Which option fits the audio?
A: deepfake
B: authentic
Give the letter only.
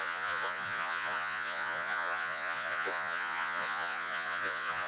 A